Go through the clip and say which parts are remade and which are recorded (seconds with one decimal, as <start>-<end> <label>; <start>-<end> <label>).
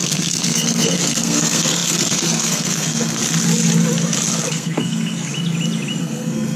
0.0-3.2 remade; 3.2-4.5 recorded; 4.5-5.3 remade; 5.3-6.0 recorded; 6.0-6.6 remade